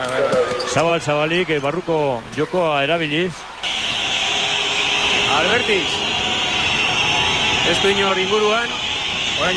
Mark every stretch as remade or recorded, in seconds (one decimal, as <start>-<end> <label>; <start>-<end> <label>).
0.0-0.9 remade; 0.9-1.8 recorded; 1.8-5.5 remade; 5.5-8.1 recorded; 8.1-9.6 remade